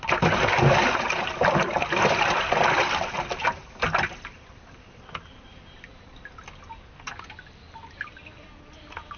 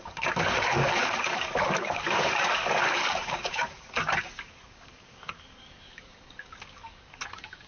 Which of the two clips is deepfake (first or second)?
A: second